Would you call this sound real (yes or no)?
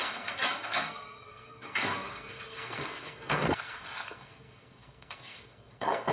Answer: no